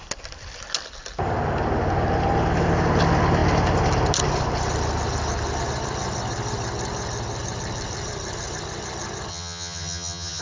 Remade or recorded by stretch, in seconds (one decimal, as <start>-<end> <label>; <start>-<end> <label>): 0.0-9.3 recorded; 9.3-10.4 remade